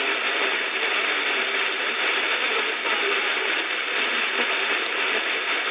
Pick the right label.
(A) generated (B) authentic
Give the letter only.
B